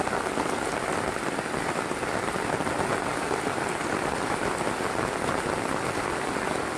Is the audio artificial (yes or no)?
no